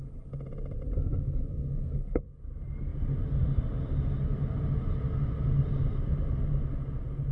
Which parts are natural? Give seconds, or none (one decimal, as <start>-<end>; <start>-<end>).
0.0-1.5; 2.4-7.3

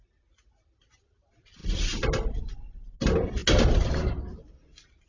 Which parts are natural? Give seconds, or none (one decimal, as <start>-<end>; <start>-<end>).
0.0-5.1

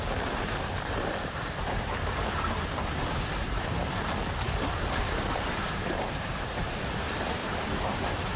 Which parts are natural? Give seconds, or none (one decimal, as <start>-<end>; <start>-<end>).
none

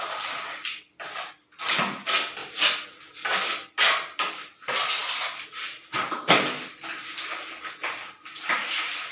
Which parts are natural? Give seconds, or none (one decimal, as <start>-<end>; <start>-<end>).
0.0-5.0; 6.0-7.8

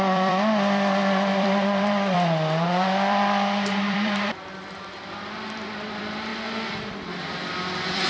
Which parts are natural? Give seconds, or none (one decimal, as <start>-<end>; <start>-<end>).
6.3-7.5

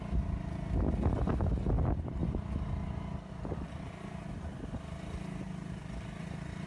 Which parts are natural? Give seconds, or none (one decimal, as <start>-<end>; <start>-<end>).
0.0-6.7

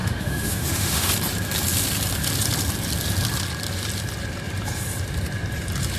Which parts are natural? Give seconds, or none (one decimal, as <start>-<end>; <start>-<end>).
1.1-6.0

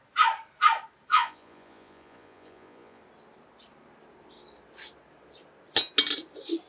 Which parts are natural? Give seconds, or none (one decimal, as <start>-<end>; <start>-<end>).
0.0-1.1; 3.0-6.7